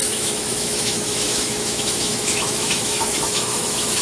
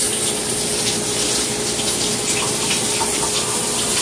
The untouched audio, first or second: second